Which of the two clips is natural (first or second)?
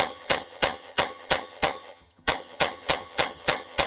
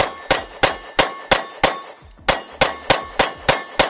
second